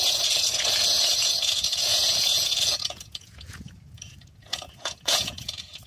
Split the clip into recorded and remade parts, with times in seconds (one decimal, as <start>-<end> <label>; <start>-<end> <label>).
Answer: 0.0-5.9 remade